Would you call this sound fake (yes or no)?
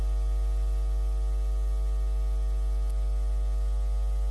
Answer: no